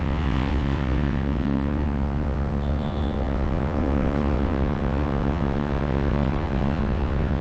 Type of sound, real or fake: fake